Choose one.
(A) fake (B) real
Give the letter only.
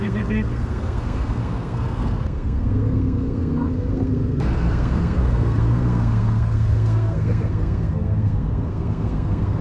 A